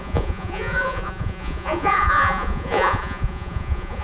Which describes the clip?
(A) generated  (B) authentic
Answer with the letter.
A